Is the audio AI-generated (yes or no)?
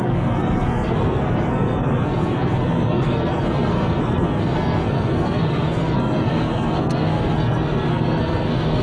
yes